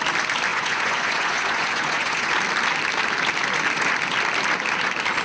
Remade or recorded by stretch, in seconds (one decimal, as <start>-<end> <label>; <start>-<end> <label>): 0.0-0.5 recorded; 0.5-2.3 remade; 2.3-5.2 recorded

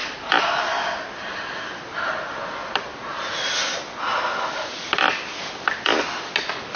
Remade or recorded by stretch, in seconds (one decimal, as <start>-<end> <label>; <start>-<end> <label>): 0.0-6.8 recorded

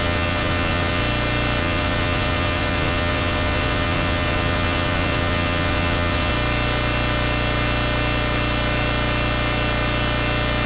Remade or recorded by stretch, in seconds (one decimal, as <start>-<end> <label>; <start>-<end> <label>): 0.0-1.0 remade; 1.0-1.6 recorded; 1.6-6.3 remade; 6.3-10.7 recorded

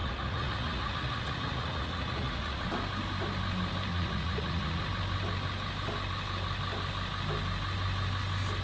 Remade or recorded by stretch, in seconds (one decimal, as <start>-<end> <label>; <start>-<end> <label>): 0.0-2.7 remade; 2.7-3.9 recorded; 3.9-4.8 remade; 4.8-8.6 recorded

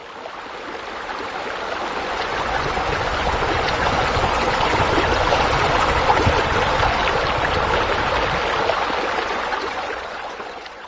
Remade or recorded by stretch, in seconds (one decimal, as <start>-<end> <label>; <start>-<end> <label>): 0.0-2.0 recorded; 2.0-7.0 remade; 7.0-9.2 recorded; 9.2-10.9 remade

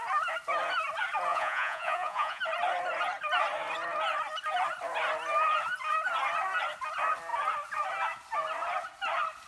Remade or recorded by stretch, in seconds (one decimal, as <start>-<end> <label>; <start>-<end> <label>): 0.0-1.3 recorded; 1.3-2.4 remade; 2.4-9.5 recorded

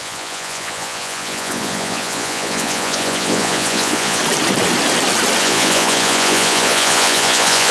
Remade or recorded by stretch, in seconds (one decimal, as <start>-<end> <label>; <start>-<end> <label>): 0.0-4.2 remade; 4.2-5.4 recorded; 5.4-7.7 remade